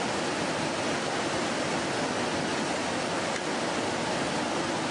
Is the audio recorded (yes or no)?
yes